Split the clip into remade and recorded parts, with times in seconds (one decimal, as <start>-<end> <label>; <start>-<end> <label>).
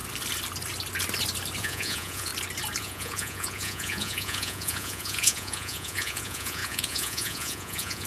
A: 0.0-1.6 recorded; 1.6-2.3 remade; 2.3-2.8 recorded; 2.8-8.1 remade